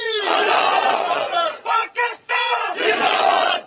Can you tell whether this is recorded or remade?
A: remade